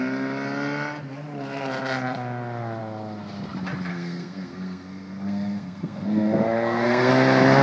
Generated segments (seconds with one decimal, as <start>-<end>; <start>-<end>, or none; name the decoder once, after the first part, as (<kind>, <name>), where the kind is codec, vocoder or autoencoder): 3.9-7.1 (codec, SNAC)